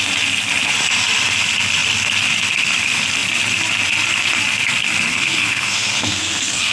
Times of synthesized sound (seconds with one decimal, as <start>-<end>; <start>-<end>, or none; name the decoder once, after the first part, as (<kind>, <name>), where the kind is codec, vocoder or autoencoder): 5.1-6.7 (codec, SNAC)